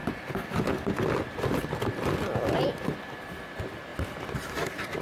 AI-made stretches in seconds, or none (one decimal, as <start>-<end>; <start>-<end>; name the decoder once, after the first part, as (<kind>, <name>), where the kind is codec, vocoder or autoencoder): none